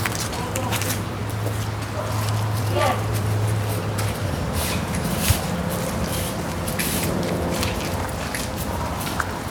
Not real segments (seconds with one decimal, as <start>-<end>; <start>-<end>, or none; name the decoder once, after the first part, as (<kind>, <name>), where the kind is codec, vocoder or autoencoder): 0.0-1.2 (vocoder, BigVGAN v2); 2.6-9.5